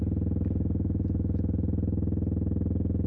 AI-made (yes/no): no